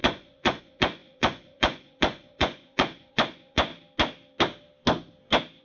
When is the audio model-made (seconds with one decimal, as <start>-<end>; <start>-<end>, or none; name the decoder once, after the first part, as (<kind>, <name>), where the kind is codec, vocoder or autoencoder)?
0.0-3.7 (vocoder, Vocos)